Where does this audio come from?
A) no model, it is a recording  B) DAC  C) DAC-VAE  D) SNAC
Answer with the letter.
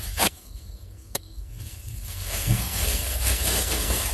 D